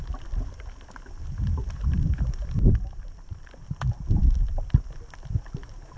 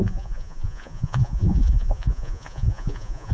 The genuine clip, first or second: first